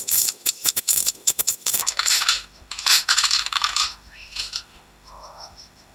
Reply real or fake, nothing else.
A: fake